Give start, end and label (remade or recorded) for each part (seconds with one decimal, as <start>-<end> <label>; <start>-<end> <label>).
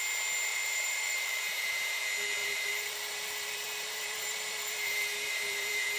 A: 0.0-0.5 recorded; 0.5-2.0 remade; 2.0-2.4 recorded; 2.4-6.0 remade